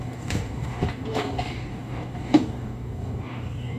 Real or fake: fake